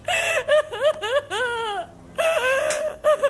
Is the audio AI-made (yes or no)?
no